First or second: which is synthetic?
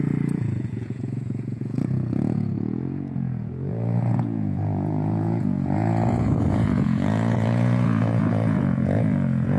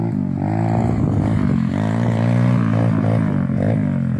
first